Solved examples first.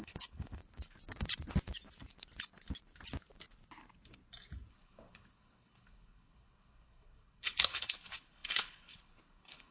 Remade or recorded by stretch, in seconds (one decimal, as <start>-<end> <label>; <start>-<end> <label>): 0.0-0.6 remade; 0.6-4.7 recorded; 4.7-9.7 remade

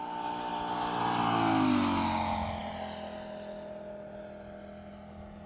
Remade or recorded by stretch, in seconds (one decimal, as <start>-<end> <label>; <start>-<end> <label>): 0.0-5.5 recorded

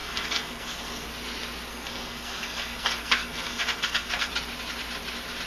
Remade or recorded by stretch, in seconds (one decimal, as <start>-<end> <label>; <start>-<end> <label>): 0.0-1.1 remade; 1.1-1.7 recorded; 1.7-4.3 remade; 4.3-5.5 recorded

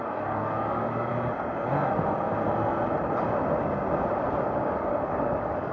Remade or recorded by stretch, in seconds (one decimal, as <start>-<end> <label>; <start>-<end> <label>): 0.0-1.1 remade; 1.1-4.5 recorded; 4.5-5.7 remade

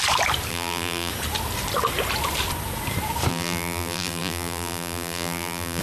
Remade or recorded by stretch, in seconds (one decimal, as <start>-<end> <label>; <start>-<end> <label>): 0.0-0.5 recorded; 0.5-1.1 remade; 1.1-3.3 recorded; 3.3-5.8 remade

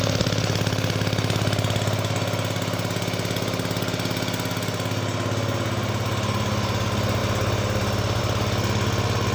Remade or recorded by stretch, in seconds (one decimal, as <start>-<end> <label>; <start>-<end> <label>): 0.0-9.3 recorded